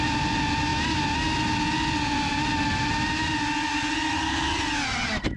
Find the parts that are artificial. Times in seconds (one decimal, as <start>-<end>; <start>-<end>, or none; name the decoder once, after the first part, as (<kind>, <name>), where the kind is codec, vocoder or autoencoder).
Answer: none